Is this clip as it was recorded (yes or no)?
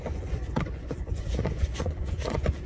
no